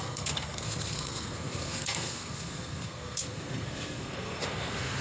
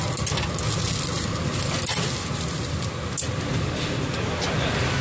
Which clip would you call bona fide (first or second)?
second